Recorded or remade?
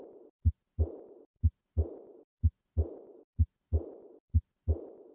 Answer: recorded